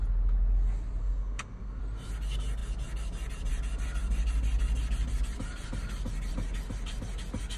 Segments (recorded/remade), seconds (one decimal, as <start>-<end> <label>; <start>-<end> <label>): 0.0-1.0 recorded; 1.0-1.8 remade; 1.8-7.6 recorded